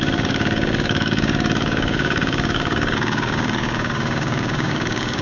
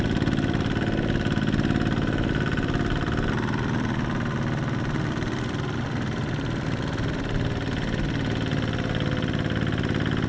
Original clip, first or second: second